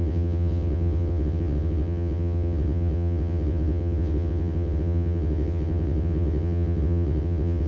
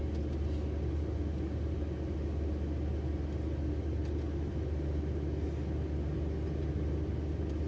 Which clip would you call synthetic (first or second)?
first